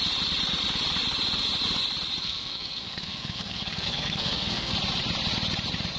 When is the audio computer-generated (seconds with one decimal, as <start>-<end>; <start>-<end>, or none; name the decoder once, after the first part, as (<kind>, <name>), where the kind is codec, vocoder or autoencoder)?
2.2-4.7 (codec, SNAC)